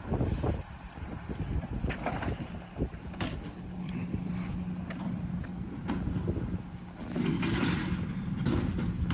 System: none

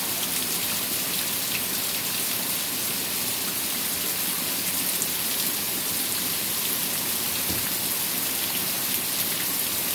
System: none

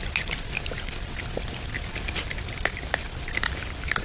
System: none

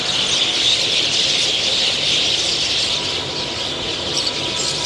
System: none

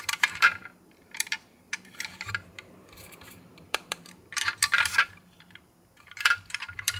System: vocoder, BigVGAN v2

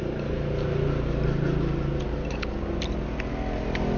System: none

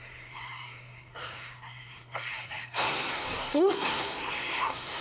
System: codec, SNAC